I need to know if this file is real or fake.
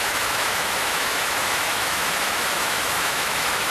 fake